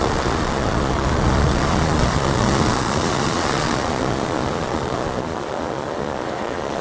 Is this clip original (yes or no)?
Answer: no